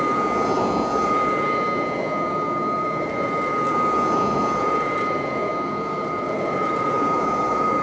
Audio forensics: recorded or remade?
remade